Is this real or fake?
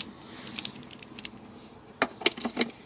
real